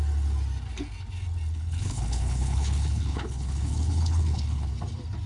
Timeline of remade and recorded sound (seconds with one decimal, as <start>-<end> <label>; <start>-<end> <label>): 0.0-1.5 recorded; 1.5-4.7 remade; 4.7-5.3 recorded